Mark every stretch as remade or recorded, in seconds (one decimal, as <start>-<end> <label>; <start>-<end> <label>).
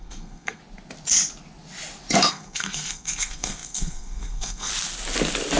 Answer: 0.0-0.6 remade; 0.6-2.3 recorded; 2.3-4.7 remade; 4.7-5.6 recorded